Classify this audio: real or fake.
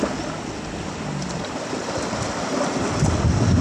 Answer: real